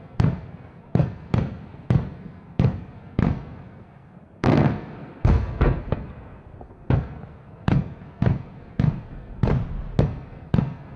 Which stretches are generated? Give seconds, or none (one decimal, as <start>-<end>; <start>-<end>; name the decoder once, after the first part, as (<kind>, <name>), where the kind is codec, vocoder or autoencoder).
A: 0.0-9.5 (codec, SNAC); 10.0-11.0